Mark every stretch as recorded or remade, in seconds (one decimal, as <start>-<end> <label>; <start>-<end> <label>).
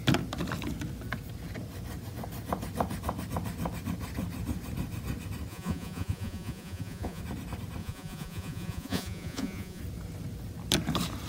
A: 0.0-5.5 recorded; 5.5-7.2 remade; 7.2-7.8 recorded; 7.8-9.8 remade; 9.8-11.3 recorded